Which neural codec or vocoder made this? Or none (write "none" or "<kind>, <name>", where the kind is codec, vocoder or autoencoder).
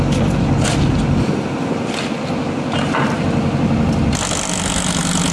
none